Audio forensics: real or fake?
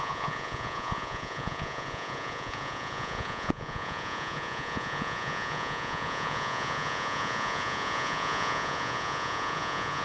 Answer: fake